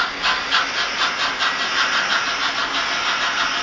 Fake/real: real